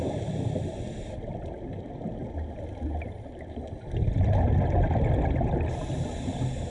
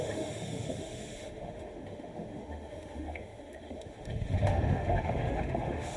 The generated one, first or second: second